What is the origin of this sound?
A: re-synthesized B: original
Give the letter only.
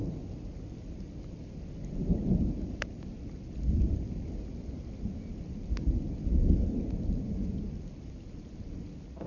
B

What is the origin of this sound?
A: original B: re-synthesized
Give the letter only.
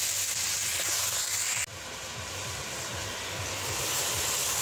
A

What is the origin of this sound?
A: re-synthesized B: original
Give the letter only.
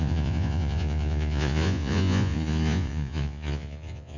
A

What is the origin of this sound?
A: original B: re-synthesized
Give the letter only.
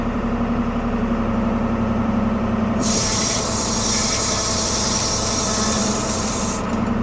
B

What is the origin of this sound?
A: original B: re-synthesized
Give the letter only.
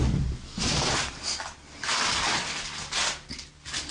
A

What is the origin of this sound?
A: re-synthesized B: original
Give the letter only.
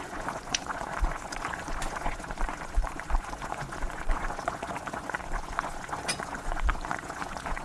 A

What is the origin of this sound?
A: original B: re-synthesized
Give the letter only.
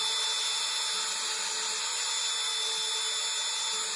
A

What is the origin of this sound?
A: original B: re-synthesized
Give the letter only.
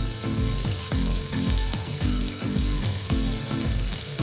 B